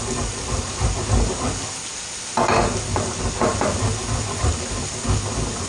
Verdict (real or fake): real